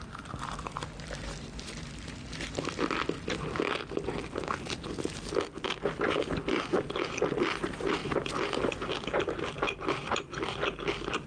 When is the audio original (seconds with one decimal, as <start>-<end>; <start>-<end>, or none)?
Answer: 0.0-11.3